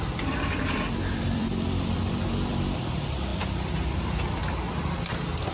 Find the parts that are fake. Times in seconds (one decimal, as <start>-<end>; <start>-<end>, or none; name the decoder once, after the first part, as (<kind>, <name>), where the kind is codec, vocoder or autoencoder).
0.0-4.4 (vocoder, BigVGAN v2)